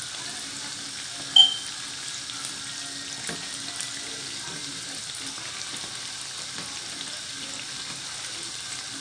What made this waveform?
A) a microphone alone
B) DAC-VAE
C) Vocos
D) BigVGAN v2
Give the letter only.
A